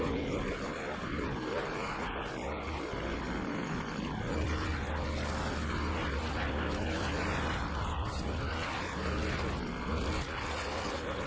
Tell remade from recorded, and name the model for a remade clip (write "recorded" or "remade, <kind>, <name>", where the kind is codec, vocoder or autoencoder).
recorded